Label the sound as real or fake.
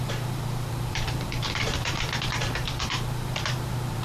fake